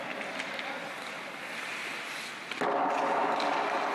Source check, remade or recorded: recorded